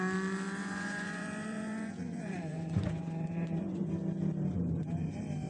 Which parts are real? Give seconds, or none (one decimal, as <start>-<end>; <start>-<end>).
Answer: 0.0-0.6; 3.9-5.5

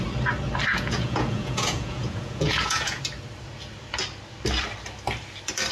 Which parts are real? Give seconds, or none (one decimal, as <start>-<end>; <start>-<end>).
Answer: 0.0-0.7; 3.0-5.7

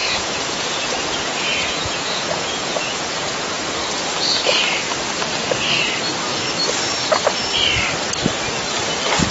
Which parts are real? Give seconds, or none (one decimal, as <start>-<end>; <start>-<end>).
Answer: 3.5-9.3

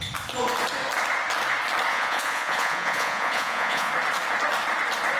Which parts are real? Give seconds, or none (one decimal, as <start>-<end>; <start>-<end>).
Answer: 0.0-1.9; 3.9-5.2

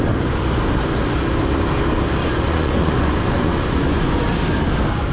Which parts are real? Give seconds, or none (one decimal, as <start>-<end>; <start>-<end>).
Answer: 0.0-2.2; 4.2-5.1

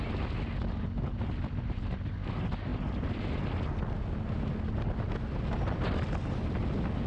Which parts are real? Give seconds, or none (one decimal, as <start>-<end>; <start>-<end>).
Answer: 0.0-7.1

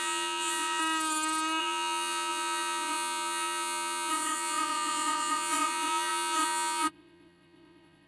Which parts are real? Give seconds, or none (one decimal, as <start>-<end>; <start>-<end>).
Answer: 0.8-1.6